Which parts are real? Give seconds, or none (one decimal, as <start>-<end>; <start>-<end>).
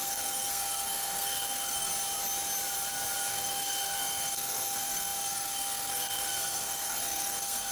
1.9-3.3